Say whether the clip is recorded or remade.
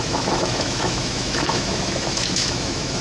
remade